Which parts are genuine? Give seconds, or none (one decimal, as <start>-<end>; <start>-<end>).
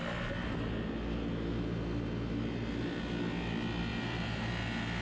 0.0-3.9; 4.5-5.0